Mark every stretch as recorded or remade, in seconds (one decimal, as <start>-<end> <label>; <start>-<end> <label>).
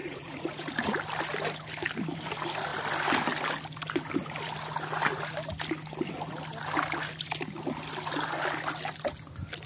0.0-0.7 remade; 0.7-9.7 recorded